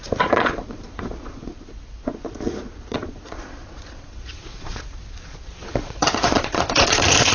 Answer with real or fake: fake